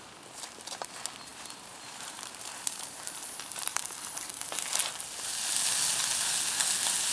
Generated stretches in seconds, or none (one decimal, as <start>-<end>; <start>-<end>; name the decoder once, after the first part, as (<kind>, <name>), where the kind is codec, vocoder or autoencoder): 1.3-4.3 (vocoder, BigVGAN v2)